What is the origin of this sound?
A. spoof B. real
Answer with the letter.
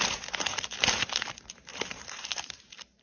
A